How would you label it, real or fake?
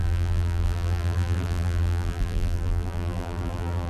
fake